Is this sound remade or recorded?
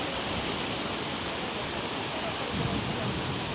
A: remade